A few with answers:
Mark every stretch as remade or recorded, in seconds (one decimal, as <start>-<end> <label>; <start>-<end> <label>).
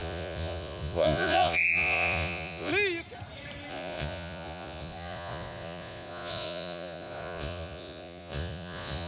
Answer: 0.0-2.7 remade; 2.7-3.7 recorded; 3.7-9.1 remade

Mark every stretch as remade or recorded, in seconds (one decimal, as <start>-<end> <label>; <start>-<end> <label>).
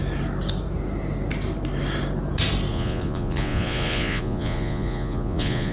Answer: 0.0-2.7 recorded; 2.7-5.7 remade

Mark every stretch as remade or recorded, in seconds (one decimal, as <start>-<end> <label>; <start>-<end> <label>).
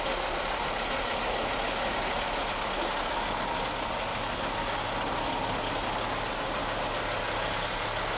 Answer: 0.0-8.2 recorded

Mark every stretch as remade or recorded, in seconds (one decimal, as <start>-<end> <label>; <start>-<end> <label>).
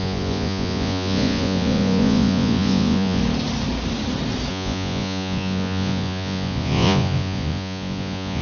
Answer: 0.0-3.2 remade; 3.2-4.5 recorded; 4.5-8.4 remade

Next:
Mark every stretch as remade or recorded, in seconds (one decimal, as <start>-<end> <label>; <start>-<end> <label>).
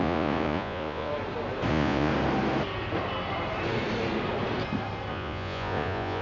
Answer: 0.0-1.1 remade; 1.1-1.7 recorded; 1.7-2.1 remade; 2.1-5.1 recorded; 5.1-6.2 remade